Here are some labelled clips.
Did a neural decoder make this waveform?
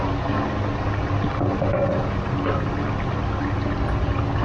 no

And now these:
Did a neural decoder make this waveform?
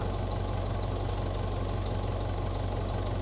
no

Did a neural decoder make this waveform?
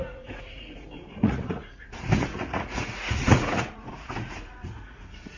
yes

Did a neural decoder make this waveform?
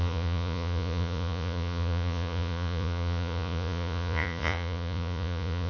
yes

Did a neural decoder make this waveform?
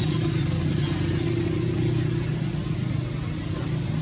no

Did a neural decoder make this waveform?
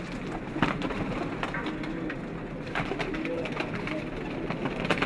no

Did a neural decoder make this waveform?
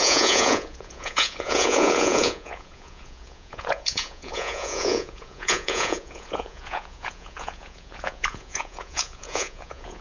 yes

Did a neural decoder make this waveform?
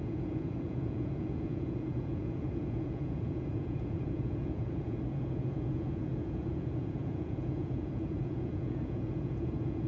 yes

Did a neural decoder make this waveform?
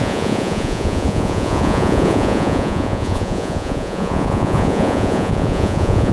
yes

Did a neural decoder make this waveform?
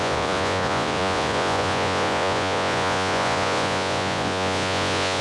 yes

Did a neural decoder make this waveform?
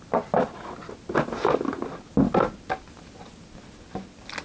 no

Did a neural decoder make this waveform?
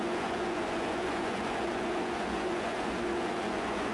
yes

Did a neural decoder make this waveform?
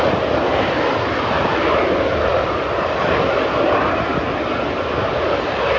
no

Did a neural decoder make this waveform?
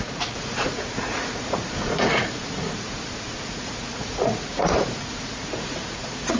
yes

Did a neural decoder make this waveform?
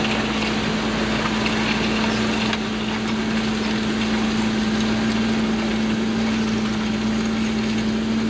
no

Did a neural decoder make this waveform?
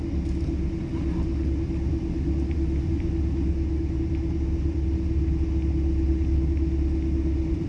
no